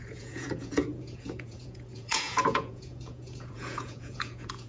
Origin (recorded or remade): remade